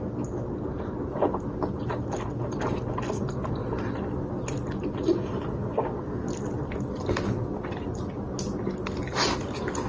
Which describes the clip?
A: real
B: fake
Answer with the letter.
A